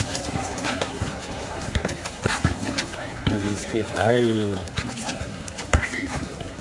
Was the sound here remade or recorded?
remade